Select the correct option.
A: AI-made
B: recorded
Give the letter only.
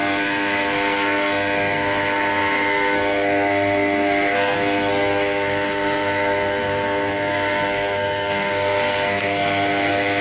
A